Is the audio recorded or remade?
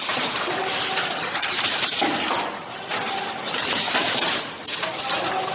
remade